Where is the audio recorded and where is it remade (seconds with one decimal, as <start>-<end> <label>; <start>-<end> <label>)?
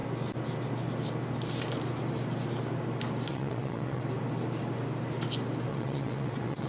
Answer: 0.0-3.3 recorded; 3.3-4.0 remade; 4.0-5.7 recorded; 5.7-6.7 remade